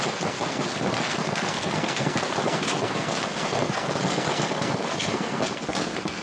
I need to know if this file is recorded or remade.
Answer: remade